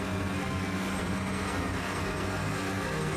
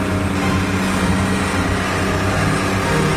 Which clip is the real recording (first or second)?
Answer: second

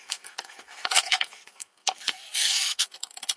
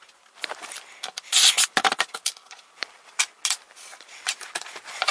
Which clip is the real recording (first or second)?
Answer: second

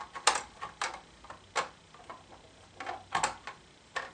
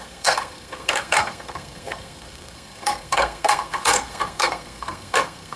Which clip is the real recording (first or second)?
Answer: first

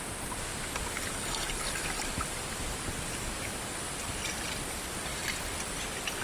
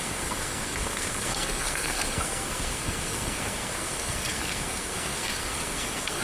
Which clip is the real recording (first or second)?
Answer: first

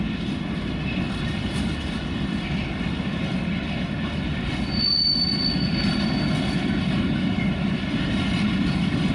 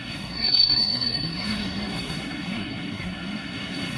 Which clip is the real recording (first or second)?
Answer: first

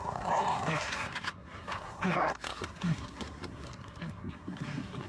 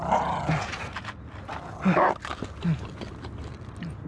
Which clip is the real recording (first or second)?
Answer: second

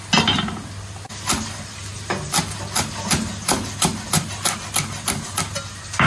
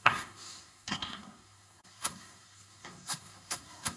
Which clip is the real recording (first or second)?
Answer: first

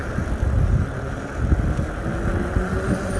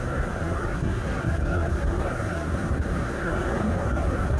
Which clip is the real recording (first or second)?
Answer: first